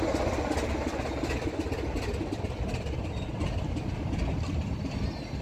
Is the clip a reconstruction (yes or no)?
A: no